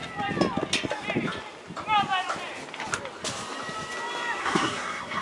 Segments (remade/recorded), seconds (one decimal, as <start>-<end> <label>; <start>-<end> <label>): 0.0-4.4 recorded; 4.4-5.2 remade